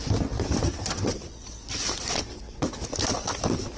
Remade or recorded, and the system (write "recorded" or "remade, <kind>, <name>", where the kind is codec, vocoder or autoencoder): recorded